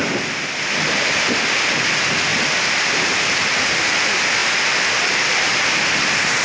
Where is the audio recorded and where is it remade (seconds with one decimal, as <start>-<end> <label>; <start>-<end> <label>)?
0.0-6.4 recorded